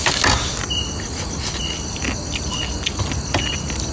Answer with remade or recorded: recorded